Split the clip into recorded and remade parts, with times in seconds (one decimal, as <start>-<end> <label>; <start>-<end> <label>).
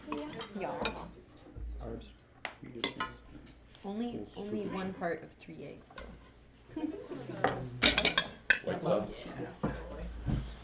0.0-10.6 recorded